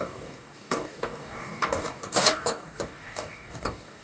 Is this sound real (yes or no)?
no